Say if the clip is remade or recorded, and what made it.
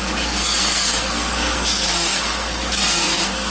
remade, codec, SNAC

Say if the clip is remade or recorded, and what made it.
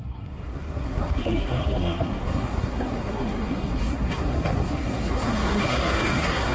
remade, codec, SNAC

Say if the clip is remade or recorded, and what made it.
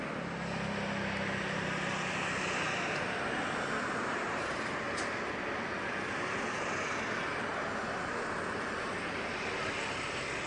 recorded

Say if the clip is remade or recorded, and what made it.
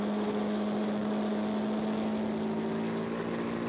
recorded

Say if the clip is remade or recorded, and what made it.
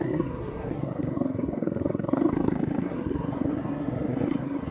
remade, codec, SNAC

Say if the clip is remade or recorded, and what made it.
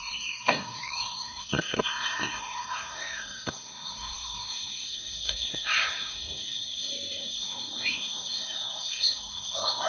remade, codec, SNAC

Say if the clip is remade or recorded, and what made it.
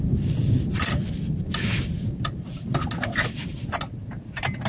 recorded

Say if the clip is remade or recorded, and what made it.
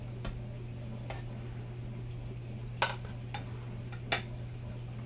recorded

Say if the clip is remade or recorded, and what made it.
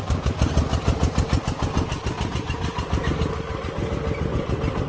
recorded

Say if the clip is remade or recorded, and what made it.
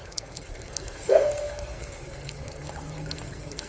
remade, codec, SNAC